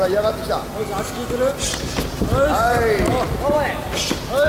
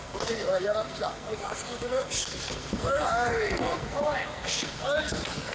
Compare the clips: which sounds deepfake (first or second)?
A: second